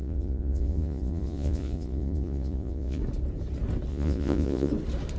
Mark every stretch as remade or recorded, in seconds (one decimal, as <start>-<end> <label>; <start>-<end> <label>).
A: 0.0-3.0 remade; 3.0-3.9 recorded; 3.9-4.7 remade; 4.7-5.2 recorded